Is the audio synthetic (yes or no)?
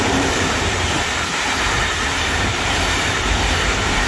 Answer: yes